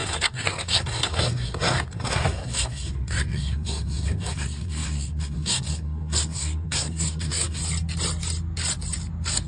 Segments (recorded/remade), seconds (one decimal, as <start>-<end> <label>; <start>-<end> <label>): 0.0-7.6 remade; 7.6-9.5 recorded